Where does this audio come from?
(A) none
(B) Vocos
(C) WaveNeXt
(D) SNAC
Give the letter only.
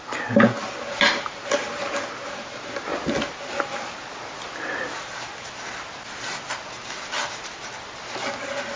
A